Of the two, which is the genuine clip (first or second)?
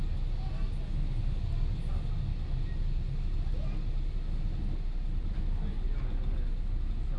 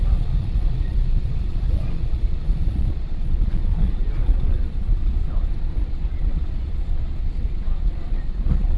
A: first